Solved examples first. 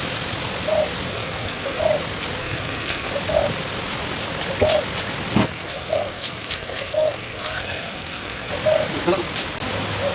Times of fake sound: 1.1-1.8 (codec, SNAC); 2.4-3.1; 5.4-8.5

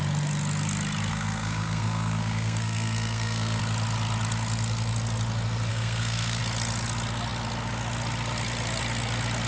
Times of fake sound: 1.1-3.6 (codec, SNAC); 5.7-6.4